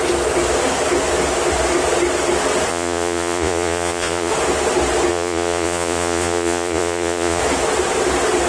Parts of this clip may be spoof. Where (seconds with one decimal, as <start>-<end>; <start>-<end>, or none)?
2.7-4.3; 5.1-7.4